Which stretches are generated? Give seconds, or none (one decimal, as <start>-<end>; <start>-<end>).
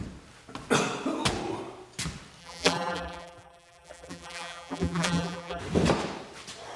2.4-5.6